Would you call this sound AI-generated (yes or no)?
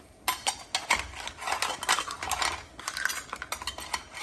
no